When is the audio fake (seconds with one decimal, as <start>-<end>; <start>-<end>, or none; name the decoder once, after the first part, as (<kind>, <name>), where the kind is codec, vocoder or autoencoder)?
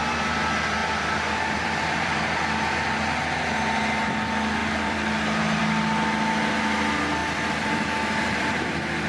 0.8-2.4 (vocoder, BigVGAN v2); 4.6-5.6; 7.2-8.6